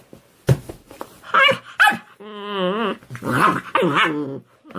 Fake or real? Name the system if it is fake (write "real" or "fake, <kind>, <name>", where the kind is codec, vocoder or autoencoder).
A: real